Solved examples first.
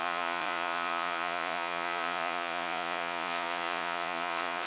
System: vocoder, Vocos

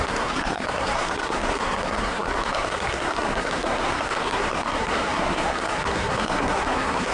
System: codec, SNAC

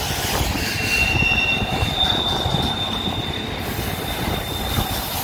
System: none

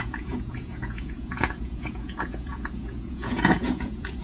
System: vocoder, Vocos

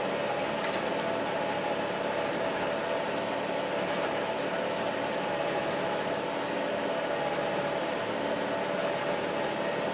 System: none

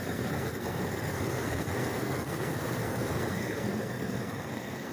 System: codec, SNAC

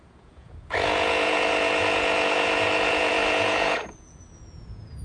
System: vocoder, Vocos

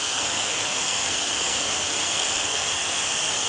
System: codec, SNAC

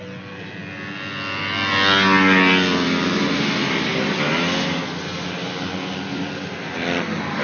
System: none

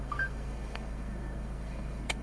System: codec, SNAC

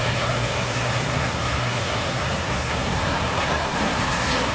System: codec, SNAC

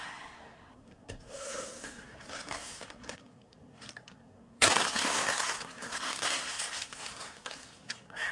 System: codec, SNAC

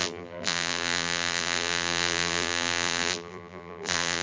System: vocoder, BigVGAN v2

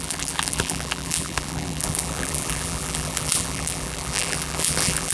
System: vocoder, BigVGAN v2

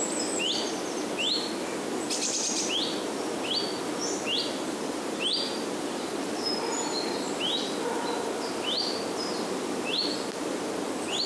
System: none